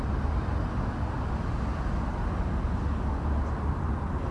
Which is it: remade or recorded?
recorded